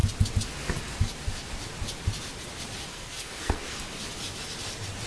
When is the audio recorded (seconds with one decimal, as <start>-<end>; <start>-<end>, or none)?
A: 0.0-2.9; 3.8-5.1

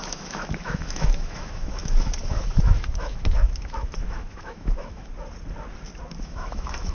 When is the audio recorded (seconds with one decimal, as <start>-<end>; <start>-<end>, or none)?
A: 5.1-6.2

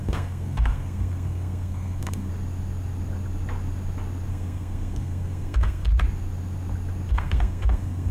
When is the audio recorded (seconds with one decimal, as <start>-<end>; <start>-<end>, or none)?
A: 2.3-4.3; 5.9-7.1